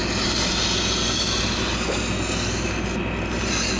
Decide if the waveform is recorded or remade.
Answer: recorded